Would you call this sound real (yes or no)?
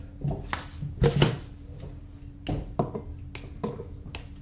yes